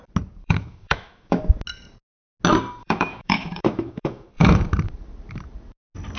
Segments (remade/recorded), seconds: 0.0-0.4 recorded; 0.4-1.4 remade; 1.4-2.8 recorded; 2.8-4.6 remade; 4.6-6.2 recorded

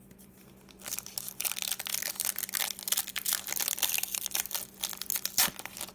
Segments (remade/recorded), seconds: 0.0-5.9 recorded